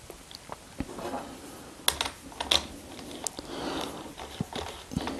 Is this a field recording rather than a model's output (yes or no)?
yes